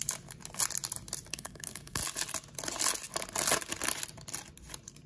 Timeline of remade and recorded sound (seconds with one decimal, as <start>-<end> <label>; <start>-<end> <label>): 0.0-1.3 recorded; 1.3-2.0 remade; 2.0-5.1 recorded